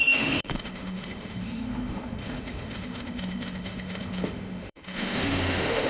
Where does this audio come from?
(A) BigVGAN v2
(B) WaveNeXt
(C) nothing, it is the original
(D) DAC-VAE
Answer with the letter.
D